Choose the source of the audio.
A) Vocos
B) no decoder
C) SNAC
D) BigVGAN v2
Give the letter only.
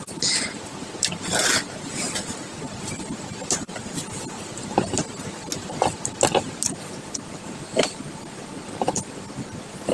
B